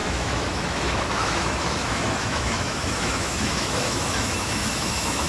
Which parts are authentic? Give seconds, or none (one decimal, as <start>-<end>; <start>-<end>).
none